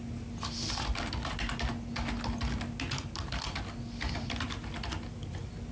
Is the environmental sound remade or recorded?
recorded